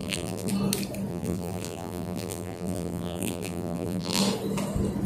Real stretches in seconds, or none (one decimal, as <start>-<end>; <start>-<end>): 0.5-1.1; 4.2-5.1